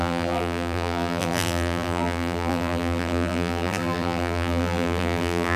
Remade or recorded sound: remade